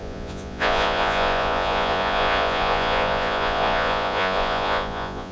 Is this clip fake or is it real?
fake